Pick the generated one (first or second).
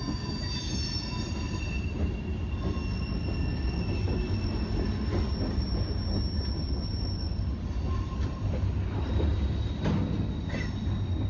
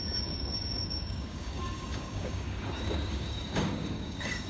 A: second